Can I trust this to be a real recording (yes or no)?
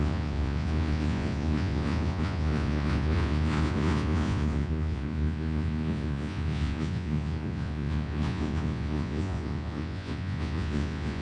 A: no